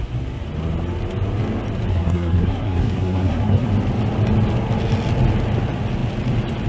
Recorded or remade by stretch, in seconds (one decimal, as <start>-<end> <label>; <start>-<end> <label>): 0.0-1.9 recorded; 1.9-3.7 remade; 3.7-6.7 recorded